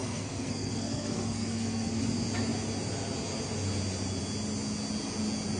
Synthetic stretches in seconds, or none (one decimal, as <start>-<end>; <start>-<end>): 0.0-2.0